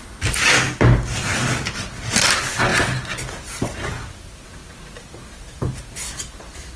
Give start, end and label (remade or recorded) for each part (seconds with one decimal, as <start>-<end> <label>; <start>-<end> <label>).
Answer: 0.0-6.8 recorded